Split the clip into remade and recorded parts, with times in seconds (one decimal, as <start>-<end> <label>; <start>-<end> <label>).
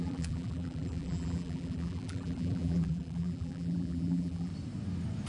0.0-4.5 remade; 4.5-5.3 recorded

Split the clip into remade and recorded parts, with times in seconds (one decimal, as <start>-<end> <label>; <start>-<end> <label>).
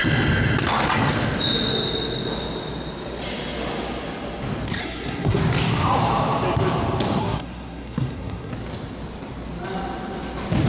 0.0-4.8 recorded; 4.8-5.4 remade; 5.4-7.2 recorded; 7.2-8.5 remade; 8.5-10.7 recorded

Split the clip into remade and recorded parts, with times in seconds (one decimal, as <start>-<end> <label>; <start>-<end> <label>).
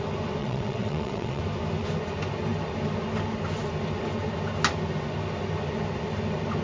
0.0-0.4 recorded; 0.4-1.4 remade; 1.4-6.6 recorded